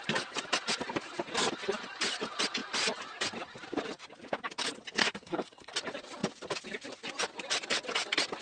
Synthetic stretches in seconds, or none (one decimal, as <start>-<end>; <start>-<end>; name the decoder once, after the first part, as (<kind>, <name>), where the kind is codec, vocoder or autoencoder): 5.0-5.7 (codec, SNAC)